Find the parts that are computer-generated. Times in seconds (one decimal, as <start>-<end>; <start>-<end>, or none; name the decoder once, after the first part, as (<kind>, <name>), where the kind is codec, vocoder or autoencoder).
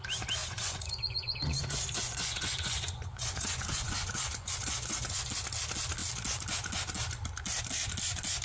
0.4-5.3 (vocoder, Vocos)